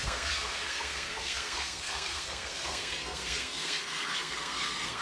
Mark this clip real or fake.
fake